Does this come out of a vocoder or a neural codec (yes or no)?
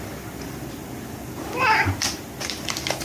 yes